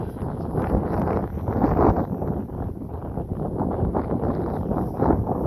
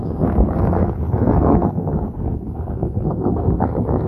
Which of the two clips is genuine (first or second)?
first